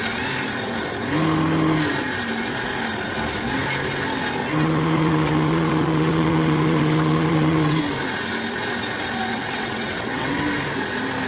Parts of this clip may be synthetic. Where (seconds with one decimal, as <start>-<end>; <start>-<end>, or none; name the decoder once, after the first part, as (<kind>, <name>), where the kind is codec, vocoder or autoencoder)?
4.4-7.8 (vocoder, WaveNeXt); 9.3-10.4